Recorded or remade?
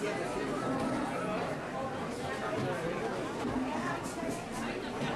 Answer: recorded